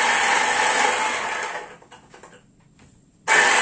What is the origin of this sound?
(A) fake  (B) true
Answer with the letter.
B